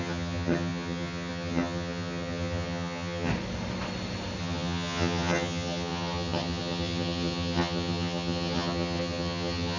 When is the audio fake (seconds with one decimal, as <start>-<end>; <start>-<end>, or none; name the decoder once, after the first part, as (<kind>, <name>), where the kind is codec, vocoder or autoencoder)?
0.0-3.3 (vocoder, HiFi-GAN); 4.4-9.8